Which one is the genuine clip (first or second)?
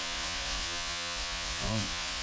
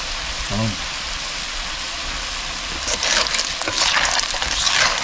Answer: second